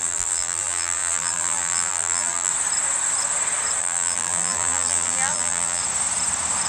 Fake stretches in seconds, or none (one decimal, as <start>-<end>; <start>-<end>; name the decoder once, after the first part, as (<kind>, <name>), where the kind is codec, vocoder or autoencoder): 0.0-2.5 (vocoder, BigVGAN v2); 3.8-5.8